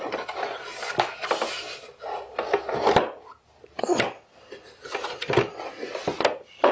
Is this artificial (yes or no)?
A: no